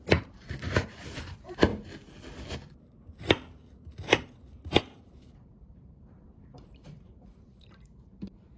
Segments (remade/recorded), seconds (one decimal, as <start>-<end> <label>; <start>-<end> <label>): 0.0-1.7 remade; 1.7-5.0 recorded; 5.0-8.6 remade